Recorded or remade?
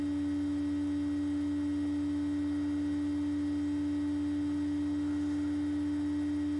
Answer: recorded